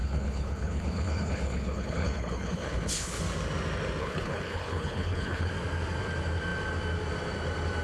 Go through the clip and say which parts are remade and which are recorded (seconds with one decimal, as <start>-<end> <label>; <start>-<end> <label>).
0.0-3.2 remade; 3.2-4.0 recorded; 4.0-5.5 remade; 5.5-7.8 recorded

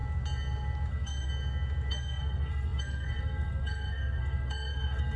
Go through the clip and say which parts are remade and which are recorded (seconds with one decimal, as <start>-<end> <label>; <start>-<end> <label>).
0.0-0.9 recorded; 0.9-1.3 remade; 1.3-1.9 recorded; 1.9-5.2 remade

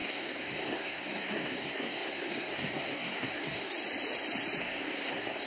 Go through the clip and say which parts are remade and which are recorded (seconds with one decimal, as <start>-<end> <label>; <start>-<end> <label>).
0.0-3.7 remade; 3.7-4.6 recorded; 4.6-5.5 remade

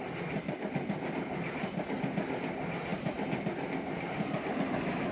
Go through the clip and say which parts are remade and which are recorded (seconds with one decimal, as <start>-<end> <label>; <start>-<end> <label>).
0.0-5.1 recorded